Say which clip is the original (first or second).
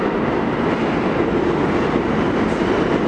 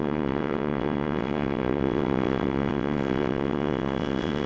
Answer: first